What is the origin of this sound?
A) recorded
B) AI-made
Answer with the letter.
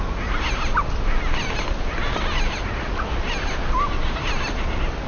A